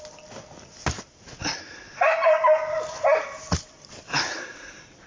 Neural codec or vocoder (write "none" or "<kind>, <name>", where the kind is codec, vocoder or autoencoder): none